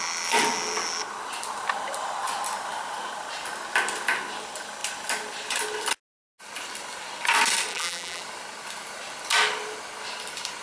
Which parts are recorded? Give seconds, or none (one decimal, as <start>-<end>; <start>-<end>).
0.0-7.7; 8.2-10.6